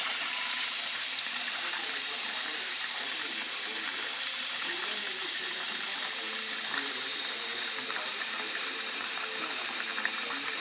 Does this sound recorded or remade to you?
remade